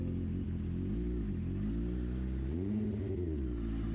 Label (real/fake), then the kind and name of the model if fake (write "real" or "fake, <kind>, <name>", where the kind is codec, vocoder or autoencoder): real